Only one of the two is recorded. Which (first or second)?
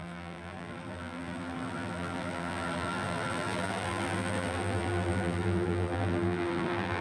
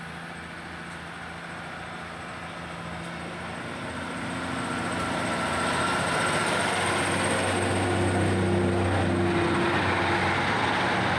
second